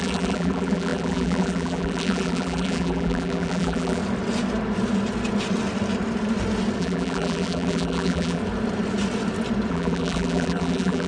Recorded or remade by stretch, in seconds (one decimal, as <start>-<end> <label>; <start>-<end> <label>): 0.0-4.0 remade; 4.0-6.8 recorded; 6.8-8.4 remade; 8.4-9.7 recorded; 9.7-11.1 remade